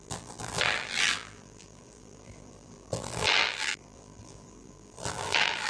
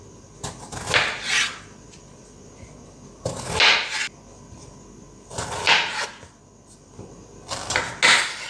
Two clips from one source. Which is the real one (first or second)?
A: second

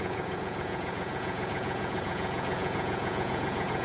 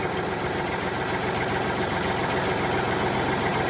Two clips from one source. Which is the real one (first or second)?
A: second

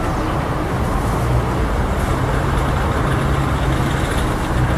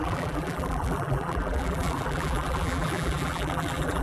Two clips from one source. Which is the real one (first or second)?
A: first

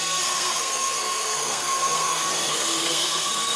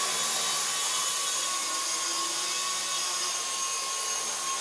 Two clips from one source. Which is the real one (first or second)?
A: second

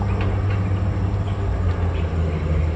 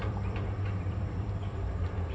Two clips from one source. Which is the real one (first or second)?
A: first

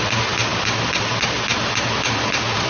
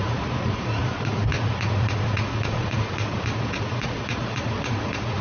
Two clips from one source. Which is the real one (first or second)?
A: first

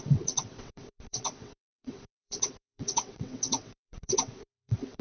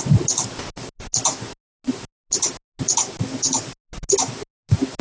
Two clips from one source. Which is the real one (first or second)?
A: second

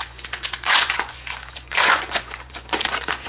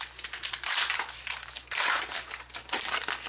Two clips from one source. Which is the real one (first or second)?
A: second